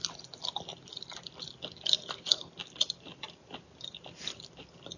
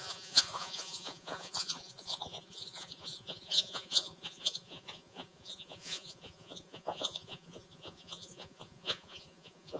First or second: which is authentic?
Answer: first